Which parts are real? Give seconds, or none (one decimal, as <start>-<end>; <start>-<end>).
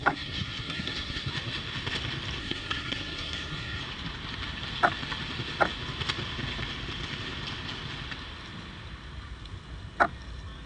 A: 1.3-2.4; 3.8-10.7